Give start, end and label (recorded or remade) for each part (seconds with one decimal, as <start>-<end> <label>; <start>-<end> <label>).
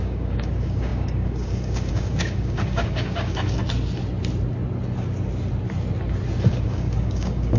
0.0-3.6 remade; 3.6-6.5 recorded; 6.5-7.6 remade